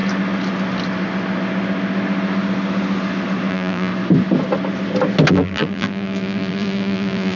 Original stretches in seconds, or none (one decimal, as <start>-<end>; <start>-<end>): 0.0-3.5; 3.9-5.3